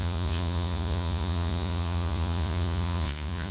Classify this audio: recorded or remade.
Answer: remade